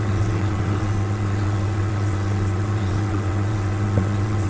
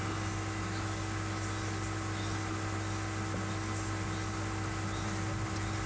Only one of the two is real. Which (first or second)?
second